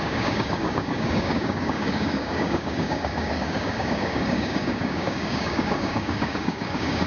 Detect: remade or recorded remade